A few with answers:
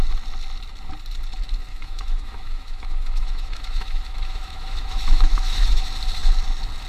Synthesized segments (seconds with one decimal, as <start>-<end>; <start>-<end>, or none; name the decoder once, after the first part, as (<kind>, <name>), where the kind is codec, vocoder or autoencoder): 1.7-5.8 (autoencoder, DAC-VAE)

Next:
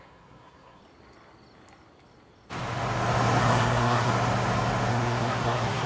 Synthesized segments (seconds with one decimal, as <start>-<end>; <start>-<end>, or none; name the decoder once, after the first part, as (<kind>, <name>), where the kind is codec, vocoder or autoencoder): 0.0-0.8 (codec, SNAC); 3.4-4.1; 4.9-5.9

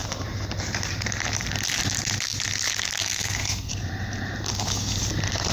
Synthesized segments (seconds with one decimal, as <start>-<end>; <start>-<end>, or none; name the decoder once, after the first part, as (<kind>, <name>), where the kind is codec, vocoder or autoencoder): 3.0-3.7 (codec, SNAC)

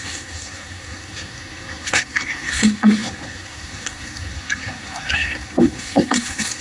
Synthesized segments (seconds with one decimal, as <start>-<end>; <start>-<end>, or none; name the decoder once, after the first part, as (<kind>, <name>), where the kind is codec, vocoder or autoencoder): 0.0-6.6 (codec, SNAC)

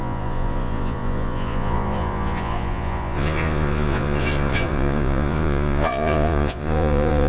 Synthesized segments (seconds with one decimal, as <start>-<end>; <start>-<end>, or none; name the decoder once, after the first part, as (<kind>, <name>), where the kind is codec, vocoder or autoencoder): 0.0-7.3 (vocoder, Vocos)